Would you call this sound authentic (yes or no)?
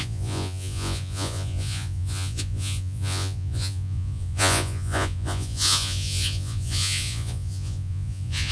no